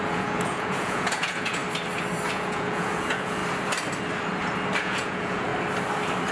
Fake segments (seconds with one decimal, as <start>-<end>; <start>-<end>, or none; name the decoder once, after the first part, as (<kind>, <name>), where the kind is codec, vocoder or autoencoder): 0.0-1.6 (vocoder, Vocos); 2.3-3.4; 4.8-5.5

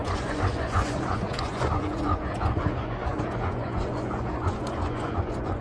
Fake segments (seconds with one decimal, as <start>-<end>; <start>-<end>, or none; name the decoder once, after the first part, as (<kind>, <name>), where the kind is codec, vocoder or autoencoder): 0.0-5.6 (vocoder, Vocos)

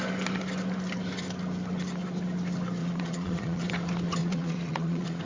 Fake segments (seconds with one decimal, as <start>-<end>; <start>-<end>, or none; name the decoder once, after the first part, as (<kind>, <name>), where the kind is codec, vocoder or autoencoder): 2.8-3.7 (vocoder, Vocos); 4.2-5.2

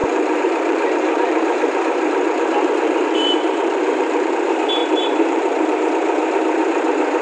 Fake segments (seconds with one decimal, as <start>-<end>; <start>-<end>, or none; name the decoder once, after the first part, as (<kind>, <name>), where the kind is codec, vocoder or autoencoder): 0.0-4.3 (vocoder, BigVGAN v2); 4.8-5.9

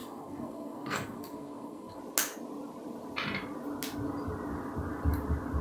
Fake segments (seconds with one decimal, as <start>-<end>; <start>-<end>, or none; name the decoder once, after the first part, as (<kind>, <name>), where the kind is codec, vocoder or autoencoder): 0.0-2.0 (codec, SNAC)

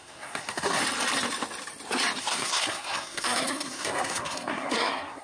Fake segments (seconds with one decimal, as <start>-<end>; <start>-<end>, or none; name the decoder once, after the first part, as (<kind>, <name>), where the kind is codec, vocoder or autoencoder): 0.0-0.8 (codec, SNAC); 2.2-5.2

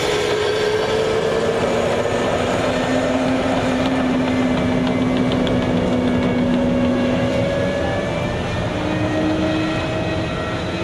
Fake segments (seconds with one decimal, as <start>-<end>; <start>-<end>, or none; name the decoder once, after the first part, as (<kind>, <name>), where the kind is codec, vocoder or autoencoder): 2.9-4.2 (vocoder, BigVGAN v2)